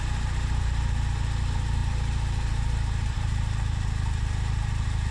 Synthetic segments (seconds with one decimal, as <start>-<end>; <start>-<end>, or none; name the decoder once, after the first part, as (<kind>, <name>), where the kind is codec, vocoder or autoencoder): 0.0-5.1 (vocoder, BigVGAN v2)